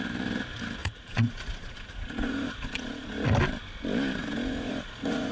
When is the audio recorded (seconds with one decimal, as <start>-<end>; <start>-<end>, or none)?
0.0-0.8; 3.3-4.2